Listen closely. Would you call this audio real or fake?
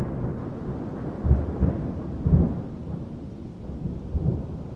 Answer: real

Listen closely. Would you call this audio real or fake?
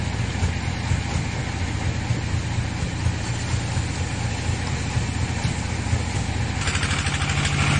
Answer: real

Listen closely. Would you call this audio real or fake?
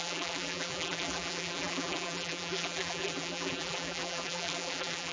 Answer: fake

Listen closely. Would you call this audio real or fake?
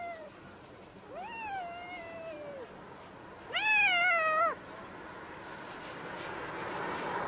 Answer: real